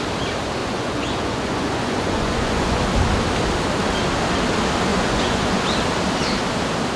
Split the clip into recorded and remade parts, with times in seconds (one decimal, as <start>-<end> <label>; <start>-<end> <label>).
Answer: 0.0-0.6 recorded; 0.6-2.8 remade; 2.8-4.9 recorded; 4.9-5.6 remade; 5.6-7.0 recorded